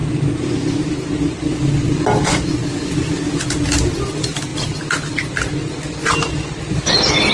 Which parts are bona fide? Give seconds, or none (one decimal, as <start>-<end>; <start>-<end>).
0.0-7.3